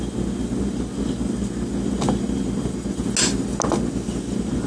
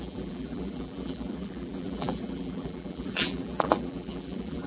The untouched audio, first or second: first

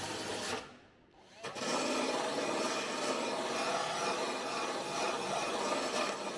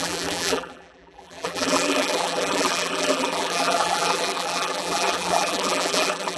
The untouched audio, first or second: first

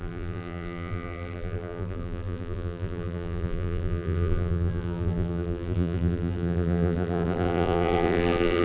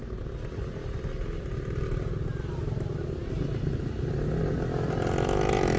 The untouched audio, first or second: second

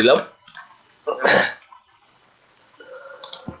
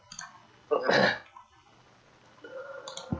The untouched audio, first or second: second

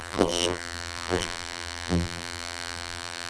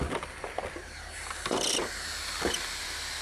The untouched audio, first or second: second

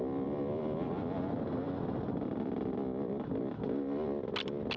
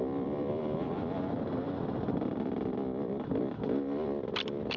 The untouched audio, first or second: first